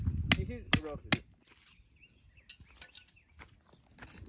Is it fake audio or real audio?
real